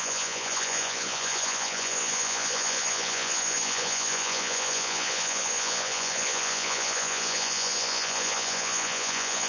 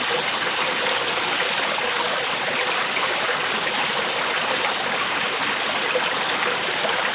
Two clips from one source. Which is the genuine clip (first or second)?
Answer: second